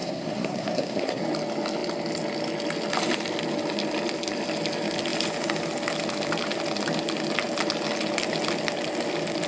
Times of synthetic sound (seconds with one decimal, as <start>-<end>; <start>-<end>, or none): 0.0-1.2